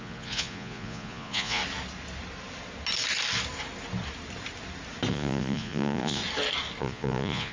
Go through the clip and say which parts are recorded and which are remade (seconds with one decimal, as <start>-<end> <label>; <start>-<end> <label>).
0.0-1.6 remade; 1.6-5.1 recorded; 5.1-6.2 remade; 6.2-6.8 recorded; 6.8-7.5 remade